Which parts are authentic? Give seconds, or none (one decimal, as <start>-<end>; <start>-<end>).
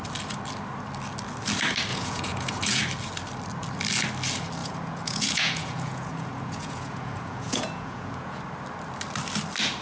0.0-1.9; 2.8-4.6; 8.4-9.8